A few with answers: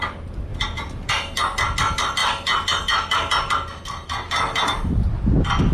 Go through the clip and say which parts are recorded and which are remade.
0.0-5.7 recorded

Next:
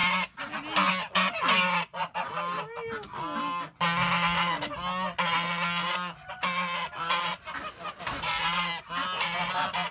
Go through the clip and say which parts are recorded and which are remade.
0.0-9.9 recorded

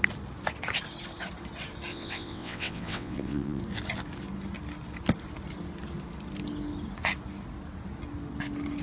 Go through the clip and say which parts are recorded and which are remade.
0.0-1.9 recorded; 1.9-3.6 remade; 3.6-8.8 recorded